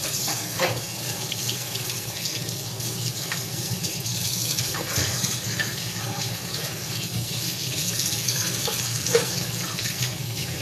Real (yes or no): no